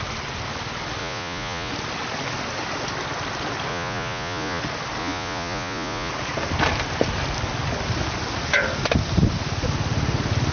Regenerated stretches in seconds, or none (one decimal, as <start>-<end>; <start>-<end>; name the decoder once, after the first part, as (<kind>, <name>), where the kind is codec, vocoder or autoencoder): 1.0-1.7 (vocoder, Vocos); 3.7-4.6; 5.0-6.1

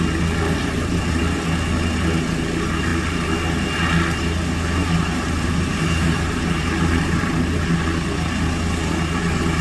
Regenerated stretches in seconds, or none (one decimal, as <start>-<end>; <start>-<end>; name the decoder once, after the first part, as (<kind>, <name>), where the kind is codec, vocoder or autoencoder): 0.6-1.2 (vocoder, BigVGAN v2); 4.8-7.5

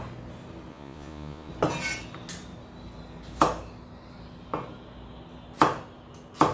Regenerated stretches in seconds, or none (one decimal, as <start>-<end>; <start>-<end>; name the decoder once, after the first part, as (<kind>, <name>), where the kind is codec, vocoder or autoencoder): 0.7-1.5 (vocoder, Vocos)

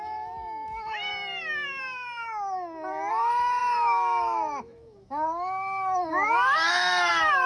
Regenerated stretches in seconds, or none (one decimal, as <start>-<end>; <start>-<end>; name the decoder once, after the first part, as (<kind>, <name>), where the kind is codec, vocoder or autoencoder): 0.0-1.1 (autoencoder, DAC-VAE); 3.1-7.5

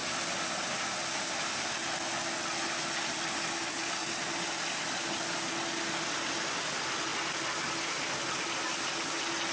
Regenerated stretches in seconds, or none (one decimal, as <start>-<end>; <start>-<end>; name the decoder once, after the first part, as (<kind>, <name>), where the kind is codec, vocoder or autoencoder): none

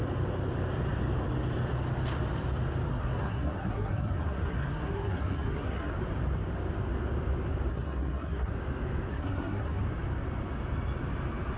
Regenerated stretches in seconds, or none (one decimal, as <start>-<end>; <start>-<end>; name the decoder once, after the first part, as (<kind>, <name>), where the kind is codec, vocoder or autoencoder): 2.9-5.9 (codec, SNAC); 7.7-8.5; 9.1-9.8

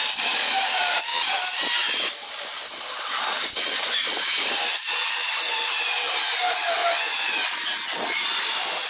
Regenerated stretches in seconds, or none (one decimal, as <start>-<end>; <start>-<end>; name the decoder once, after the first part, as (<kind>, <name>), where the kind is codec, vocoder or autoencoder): 0.0-1.1 (vocoder, BigVGAN v2); 2.1-6.8; 8.4-8.9

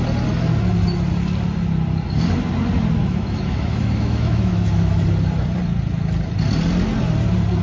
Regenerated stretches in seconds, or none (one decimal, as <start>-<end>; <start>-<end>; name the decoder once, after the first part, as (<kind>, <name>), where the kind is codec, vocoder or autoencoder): 3.0-5.0 (autoencoder, DAC-VAE)